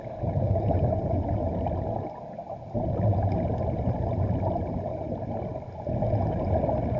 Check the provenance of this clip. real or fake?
real